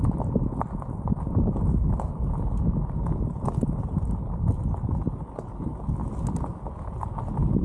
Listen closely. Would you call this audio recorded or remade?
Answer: recorded